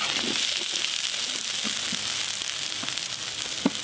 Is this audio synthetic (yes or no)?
no